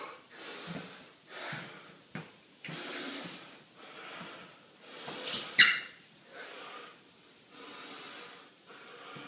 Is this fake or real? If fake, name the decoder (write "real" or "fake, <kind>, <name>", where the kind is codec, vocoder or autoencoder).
real